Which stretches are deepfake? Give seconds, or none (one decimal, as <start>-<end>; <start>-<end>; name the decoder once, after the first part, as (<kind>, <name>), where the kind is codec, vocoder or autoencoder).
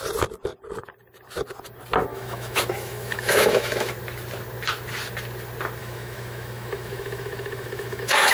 2.1-3.9 (autoencoder, DAC-VAE); 5.8-8.3